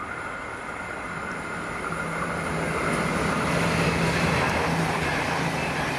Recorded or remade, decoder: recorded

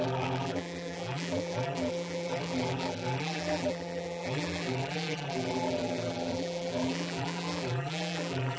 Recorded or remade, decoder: remade, vocoder, BigVGAN v2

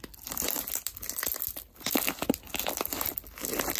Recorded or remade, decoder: recorded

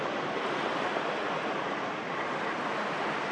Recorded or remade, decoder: remade, vocoder, BigVGAN v2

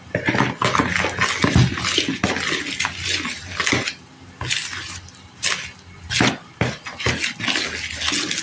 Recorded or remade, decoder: recorded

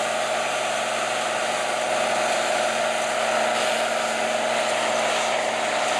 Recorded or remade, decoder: recorded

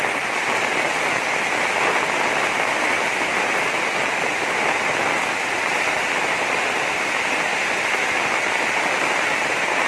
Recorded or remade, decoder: recorded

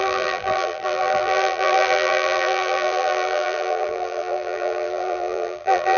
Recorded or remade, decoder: remade, vocoder, BigVGAN v2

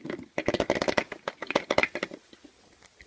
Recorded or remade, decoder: recorded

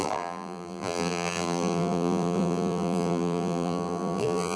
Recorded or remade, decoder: remade, vocoder, BigVGAN v2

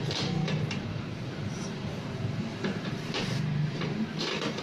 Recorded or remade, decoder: remade, vocoder, BigVGAN v2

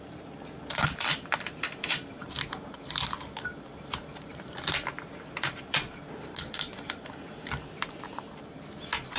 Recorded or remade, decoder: remade, vocoder, BigVGAN v2